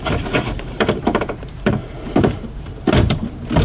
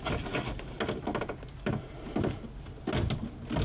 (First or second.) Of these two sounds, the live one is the second